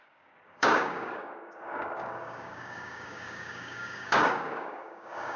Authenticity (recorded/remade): remade